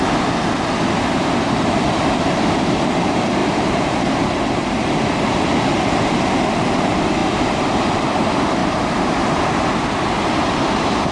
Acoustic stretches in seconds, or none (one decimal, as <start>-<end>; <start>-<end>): 0.0-3.4; 4.3-8.6; 9.5-11.1

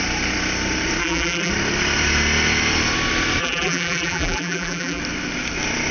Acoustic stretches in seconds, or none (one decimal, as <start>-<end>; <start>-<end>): 0.0-1.0; 1.5-3.4; 5.0-5.9

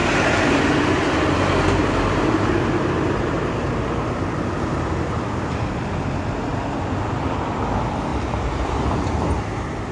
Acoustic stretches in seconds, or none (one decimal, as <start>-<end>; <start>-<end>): 0.6-1.8; 5.3-8.1; 8.7-9.9

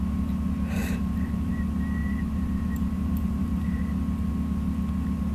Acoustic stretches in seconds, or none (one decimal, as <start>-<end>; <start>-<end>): 0.0-0.8; 1.5-2.0; 3.8-5.3

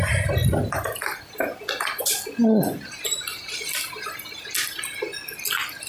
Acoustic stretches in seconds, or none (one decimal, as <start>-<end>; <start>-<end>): 0.0-5.9